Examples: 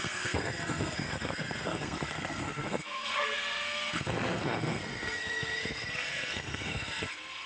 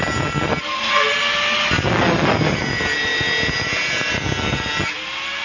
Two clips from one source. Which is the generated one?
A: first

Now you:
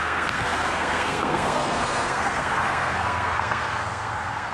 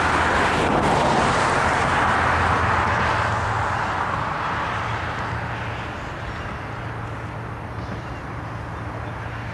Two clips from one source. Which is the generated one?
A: first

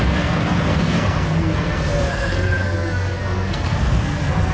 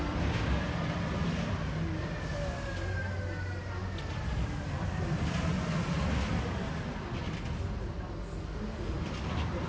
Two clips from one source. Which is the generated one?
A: first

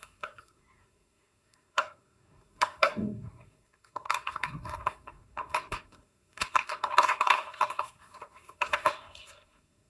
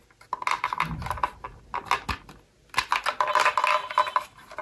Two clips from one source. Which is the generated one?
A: first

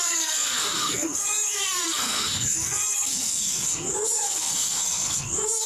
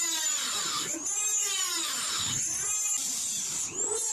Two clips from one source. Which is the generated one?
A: first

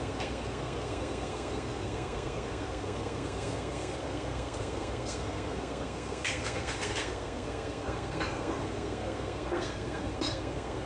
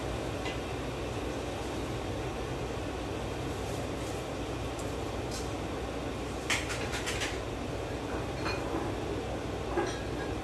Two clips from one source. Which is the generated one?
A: first